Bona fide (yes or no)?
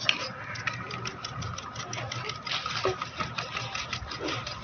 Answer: yes